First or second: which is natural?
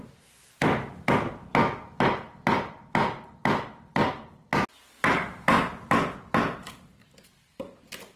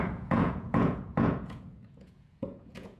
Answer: first